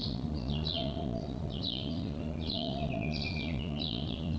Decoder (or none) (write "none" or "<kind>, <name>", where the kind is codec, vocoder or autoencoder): vocoder, Vocos